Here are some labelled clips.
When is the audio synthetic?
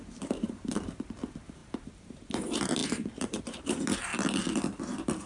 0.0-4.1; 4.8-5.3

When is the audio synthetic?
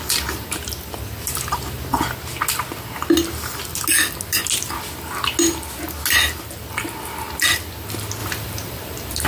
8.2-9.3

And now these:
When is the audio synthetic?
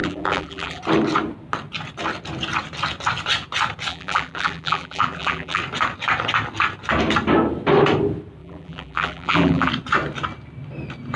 0.0-0.8; 3.9-5.6; 8.4-9.7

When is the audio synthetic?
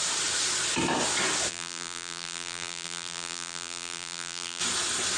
1.5-4.6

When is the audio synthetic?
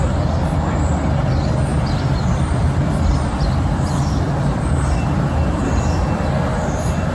1.7-6.0